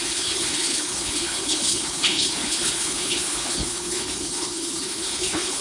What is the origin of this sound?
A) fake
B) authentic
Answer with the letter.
A